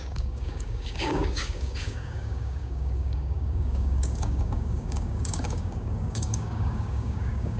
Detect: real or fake fake